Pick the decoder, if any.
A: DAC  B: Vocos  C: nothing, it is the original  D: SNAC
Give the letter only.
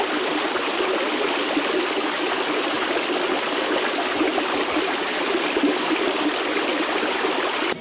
C